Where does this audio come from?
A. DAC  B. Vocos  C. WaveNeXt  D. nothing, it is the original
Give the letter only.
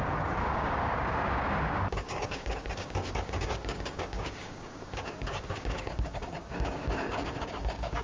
A